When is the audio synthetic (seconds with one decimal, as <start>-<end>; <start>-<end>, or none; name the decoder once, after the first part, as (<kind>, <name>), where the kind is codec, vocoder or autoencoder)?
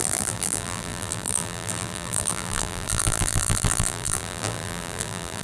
0.0-5.4 (vocoder, BigVGAN v2)